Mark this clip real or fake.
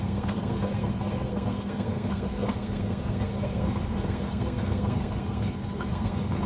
fake